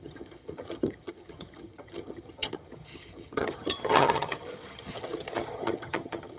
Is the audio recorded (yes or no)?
no